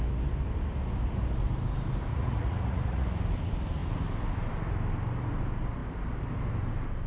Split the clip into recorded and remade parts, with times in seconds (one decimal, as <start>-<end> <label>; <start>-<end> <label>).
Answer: 0.0-2.1 recorded; 2.1-3.1 remade; 3.1-7.1 recorded